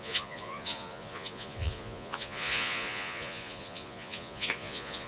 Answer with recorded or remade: remade